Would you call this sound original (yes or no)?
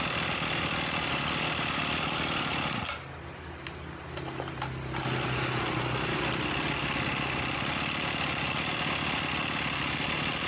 yes